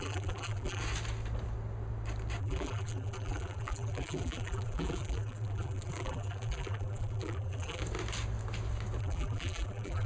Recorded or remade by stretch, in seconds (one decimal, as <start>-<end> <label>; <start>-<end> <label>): 0.0-0.8 remade; 0.8-2.4 recorded; 2.4-7.8 remade; 7.8-9.0 recorded; 9.0-10.1 remade